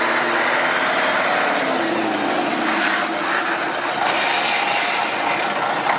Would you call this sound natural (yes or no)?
yes